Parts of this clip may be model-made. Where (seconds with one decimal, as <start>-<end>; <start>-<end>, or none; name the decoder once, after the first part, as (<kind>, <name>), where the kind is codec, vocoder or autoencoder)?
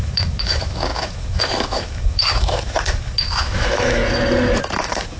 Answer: 0.0-4.0 (autoencoder, DAC-VAE); 4.8-5.2